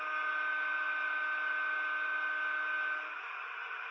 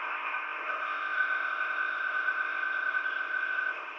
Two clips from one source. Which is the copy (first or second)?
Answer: second